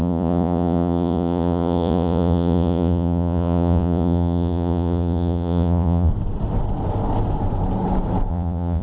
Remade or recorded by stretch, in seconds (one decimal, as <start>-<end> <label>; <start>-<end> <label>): 0.0-6.1 remade; 6.1-8.3 recorded; 8.3-8.8 remade